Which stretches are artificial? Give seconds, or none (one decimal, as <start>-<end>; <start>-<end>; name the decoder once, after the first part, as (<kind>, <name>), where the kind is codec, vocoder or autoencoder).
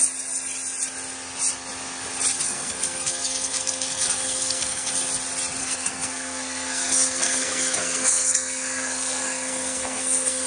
2.3-4.9 (codec, SNAC); 5.6-10.5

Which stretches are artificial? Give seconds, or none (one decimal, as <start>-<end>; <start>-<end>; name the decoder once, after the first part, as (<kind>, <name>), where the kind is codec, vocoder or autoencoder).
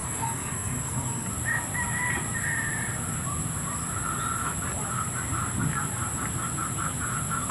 0.0-1.3 (codec, SNAC)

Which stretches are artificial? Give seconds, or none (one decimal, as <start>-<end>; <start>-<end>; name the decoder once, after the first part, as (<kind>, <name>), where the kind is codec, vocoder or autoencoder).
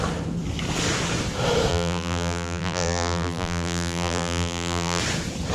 1.7-5.0 (vocoder, BigVGAN v2)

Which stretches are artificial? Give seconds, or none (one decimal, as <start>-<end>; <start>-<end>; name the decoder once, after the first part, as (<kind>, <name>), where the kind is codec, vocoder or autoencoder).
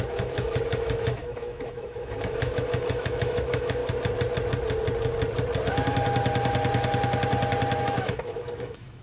0.0-3.8 (autoencoder, DAC-VAE); 7.8-9.0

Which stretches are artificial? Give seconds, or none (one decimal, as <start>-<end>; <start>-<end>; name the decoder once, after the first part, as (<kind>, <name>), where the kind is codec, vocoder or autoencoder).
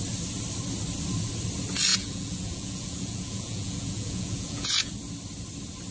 1.9-4.9 (vocoder, Vocos)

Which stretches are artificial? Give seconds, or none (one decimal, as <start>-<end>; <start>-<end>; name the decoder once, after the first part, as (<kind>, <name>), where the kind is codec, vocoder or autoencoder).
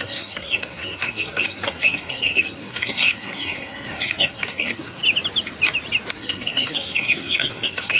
0.0-5.0 (codec, SNAC); 6.1-8.0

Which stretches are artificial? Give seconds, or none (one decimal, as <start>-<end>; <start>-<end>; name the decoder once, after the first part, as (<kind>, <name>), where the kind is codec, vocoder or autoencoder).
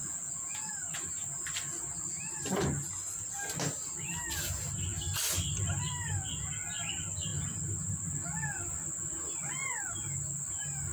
0.0-0.7 (vocoder, Vocos)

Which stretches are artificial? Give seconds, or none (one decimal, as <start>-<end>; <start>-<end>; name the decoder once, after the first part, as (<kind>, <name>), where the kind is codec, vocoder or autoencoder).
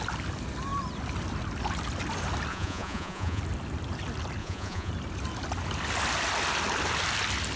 2.5-3.4 (vocoder, Vocos); 4.4-4.9